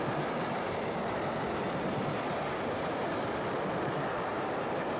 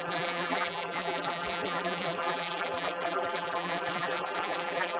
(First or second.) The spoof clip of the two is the second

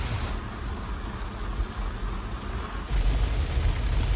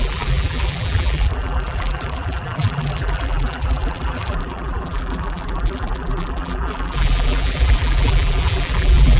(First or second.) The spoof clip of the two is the second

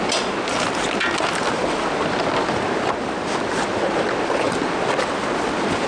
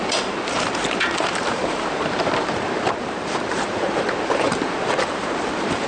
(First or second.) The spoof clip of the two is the second